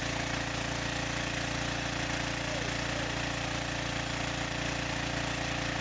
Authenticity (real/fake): real